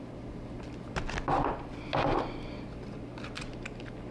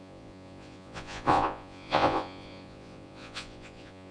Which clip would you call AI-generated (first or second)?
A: second